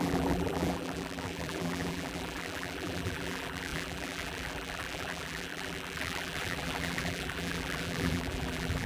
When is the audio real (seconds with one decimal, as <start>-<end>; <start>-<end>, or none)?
none